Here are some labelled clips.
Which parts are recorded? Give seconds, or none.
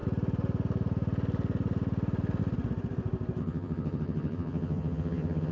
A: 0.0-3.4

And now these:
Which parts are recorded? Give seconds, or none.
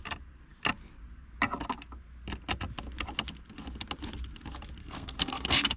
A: 0.0-4.8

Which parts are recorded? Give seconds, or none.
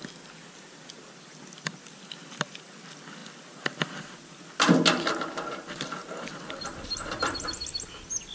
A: 0.0-8.3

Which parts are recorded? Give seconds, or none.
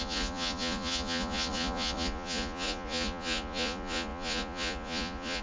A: none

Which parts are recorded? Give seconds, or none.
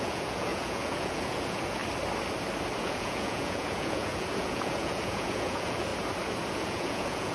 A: 1.8-2.8; 5.9-6.5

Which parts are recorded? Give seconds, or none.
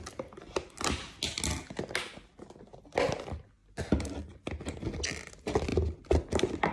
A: 0.0-6.7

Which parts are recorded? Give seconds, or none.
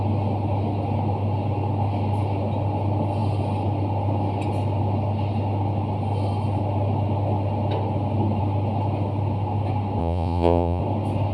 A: 0.0-10.0; 10.8-11.3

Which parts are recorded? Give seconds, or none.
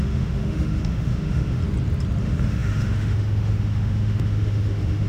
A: 1.6-2.2